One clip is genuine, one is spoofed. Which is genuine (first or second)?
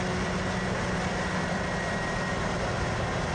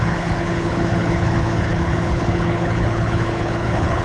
first